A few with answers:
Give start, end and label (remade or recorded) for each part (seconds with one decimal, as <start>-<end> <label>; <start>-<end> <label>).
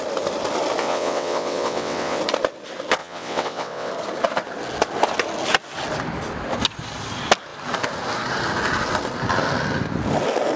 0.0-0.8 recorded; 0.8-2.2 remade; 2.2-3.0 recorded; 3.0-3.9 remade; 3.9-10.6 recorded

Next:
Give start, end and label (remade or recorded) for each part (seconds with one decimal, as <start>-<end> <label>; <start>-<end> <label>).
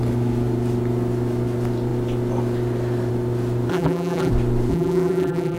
0.0-3.7 recorded; 3.7-4.3 remade; 4.3-4.7 recorded; 4.7-5.6 remade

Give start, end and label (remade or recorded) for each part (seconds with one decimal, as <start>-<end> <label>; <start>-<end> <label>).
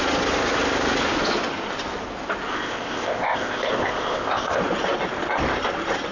0.0-2.5 recorded; 2.5-4.6 remade; 4.6-6.1 recorded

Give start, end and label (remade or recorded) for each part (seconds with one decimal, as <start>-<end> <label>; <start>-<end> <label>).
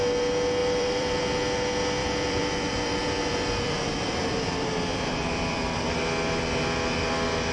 0.0-0.6 recorded; 0.6-1.2 remade; 1.2-2.0 recorded; 2.0-5.8 remade; 5.8-7.5 recorded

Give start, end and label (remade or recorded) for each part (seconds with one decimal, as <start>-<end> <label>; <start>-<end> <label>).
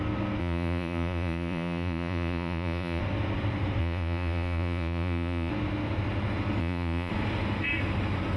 0.0-0.4 recorded; 0.4-3.0 remade; 3.0-3.8 recorded; 3.8-5.5 remade; 5.5-6.6 recorded; 6.6-7.1 remade; 7.1-8.4 recorded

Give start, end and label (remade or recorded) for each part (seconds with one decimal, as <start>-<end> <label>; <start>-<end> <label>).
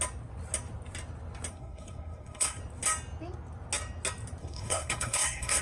0.0-1.5 recorded; 1.5-2.6 remade; 2.6-4.4 recorded; 4.4-5.6 remade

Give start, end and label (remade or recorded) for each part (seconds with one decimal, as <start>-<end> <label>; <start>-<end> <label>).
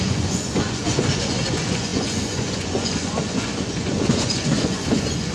0.0-5.3 remade